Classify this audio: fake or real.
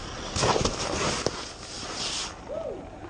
real